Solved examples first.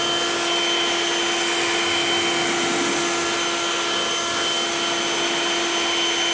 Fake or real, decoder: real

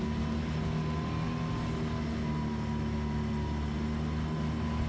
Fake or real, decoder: real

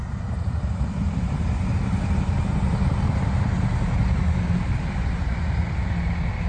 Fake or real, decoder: real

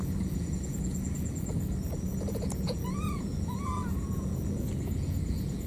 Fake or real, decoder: fake, vocoder, Vocos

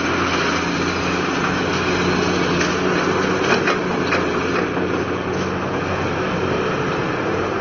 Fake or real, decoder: real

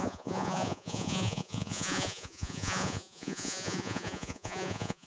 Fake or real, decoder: fake, vocoder, Vocos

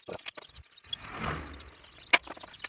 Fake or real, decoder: real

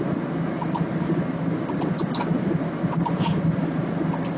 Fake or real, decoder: real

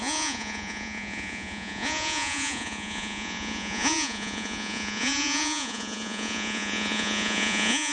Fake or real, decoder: fake, vocoder, Vocos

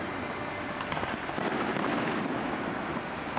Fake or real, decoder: real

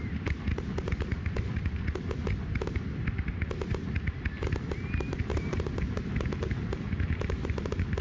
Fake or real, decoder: real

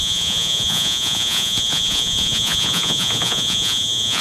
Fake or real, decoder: fake, vocoder, Vocos